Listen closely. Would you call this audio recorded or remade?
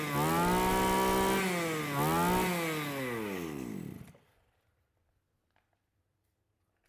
recorded